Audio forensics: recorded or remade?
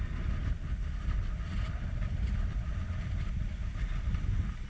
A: recorded